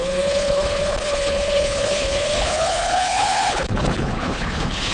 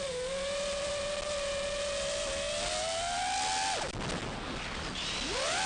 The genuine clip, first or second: second